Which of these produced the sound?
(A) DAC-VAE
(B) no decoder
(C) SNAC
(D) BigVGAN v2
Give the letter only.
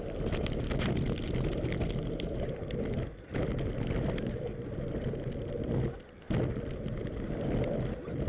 B